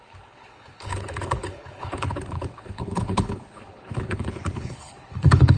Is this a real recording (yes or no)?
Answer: no